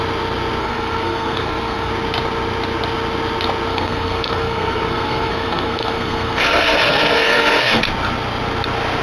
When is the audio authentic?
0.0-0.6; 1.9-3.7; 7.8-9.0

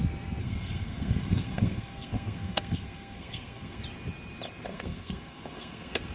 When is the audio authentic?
0.0-0.4; 3.8-4.7

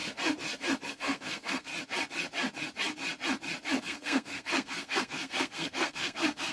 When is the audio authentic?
0.0-0.9; 1.7-3.8

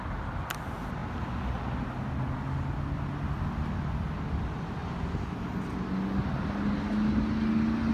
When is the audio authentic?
0.0-7.9

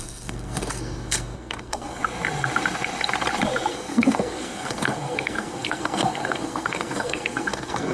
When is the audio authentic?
2.0-3.7

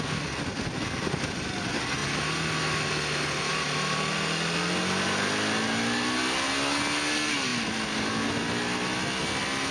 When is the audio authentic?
0.0-9.7

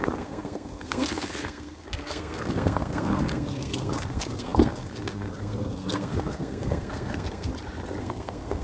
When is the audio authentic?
7.5-8.0